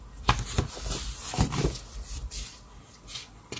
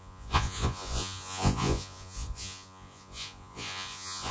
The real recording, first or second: first